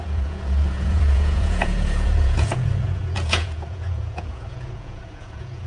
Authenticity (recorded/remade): remade